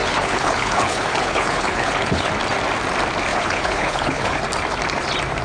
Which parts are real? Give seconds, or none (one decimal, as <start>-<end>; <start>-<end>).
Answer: 2.3-3.3; 4.4-5.4